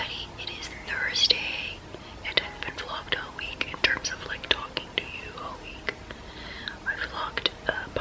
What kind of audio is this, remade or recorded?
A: recorded